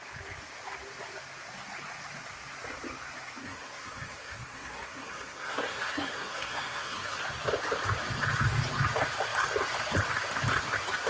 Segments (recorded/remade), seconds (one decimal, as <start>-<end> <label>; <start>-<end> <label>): 0.0-3.4 recorded; 3.4-7.2 remade; 7.2-11.1 recorded